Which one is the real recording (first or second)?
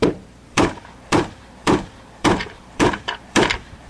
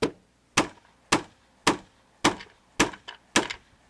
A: second